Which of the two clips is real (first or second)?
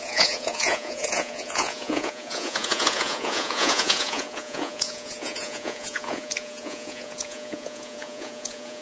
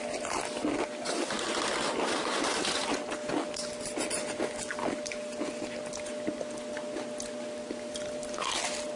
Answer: second